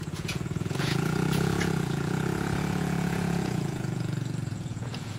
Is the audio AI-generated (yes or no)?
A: yes